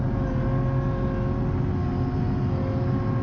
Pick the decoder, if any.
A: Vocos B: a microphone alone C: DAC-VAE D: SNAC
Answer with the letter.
B